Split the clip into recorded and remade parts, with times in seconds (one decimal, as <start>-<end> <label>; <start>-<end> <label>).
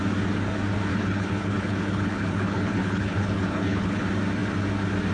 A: 0.0-0.9 recorded; 0.9-4.0 remade; 4.0-5.1 recorded